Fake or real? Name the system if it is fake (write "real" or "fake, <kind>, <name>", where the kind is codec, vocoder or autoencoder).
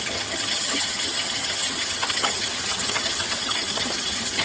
fake, vocoder, HiFi-GAN